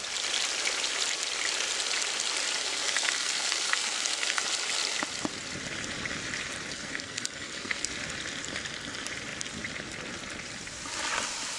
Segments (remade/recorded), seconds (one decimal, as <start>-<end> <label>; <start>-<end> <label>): 0.0-2.6 recorded; 2.6-4.4 remade; 4.4-6.7 recorded; 6.7-7.9 remade; 7.9-11.6 recorded